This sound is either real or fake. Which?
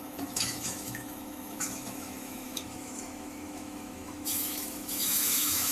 fake